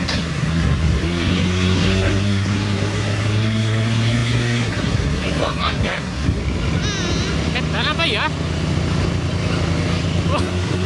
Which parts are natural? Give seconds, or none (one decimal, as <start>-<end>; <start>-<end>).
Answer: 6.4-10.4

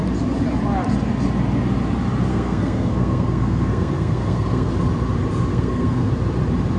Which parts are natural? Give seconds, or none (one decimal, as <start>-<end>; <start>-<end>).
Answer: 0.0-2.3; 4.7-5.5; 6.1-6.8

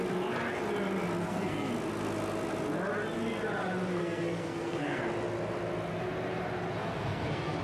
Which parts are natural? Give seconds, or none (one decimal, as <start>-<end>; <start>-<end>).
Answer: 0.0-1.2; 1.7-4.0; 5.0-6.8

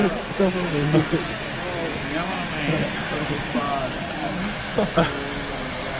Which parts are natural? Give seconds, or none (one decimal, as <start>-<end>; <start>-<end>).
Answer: 0.0-6.0